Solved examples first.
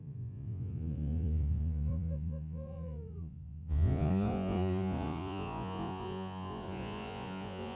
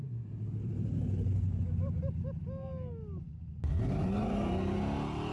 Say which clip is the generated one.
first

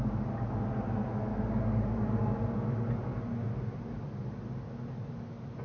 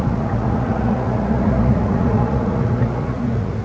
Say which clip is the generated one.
second